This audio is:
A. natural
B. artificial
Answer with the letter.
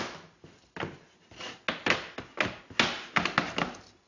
A